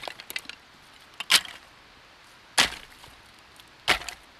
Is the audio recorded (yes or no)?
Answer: yes